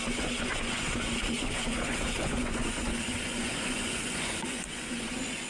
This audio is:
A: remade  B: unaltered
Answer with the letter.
A